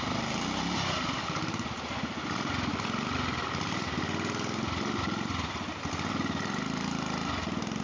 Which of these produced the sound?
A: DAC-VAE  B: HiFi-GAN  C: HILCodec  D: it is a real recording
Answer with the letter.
D